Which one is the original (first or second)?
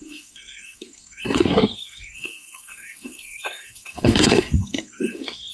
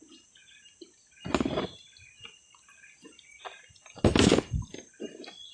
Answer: second